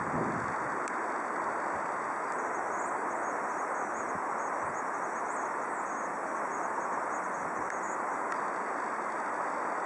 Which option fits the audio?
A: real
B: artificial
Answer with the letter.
A